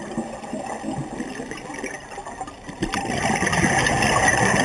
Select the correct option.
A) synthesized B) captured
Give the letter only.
B